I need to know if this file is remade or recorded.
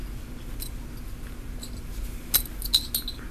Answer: recorded